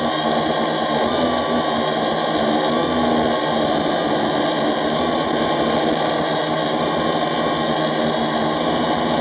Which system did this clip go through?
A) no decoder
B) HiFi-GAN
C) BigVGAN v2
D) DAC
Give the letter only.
A